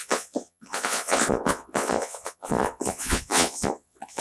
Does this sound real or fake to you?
fake